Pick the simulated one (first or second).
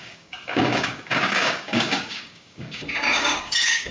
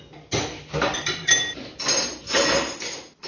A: first